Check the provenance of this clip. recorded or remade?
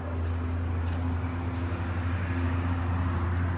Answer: recorded